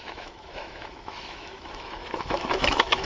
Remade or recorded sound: remade